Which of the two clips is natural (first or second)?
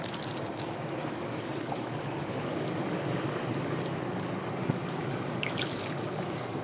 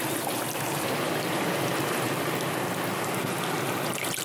second